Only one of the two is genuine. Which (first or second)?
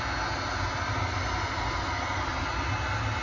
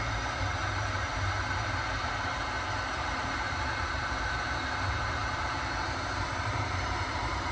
first